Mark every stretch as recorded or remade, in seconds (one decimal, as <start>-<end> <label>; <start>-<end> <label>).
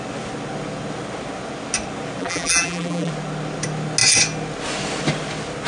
0.0-2.2 recorded; 2.2-3.1 remade; 3.1-5.7 recorded